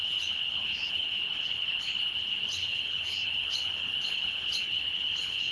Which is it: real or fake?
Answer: fake